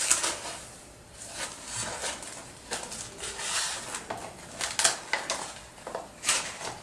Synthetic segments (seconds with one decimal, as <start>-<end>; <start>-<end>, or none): none